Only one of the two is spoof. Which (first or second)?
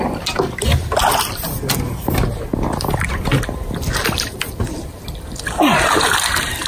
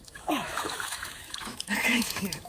second